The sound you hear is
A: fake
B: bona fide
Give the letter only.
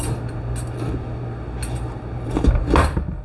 B